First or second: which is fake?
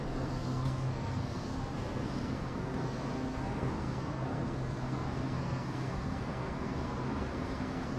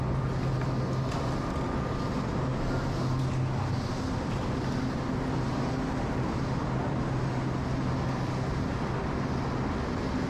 first